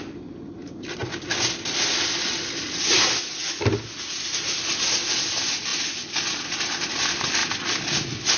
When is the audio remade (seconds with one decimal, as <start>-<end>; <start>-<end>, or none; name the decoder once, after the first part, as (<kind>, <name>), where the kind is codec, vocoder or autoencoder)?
none